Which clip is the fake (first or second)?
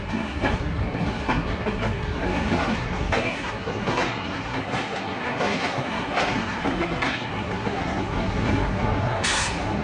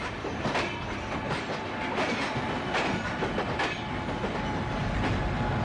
first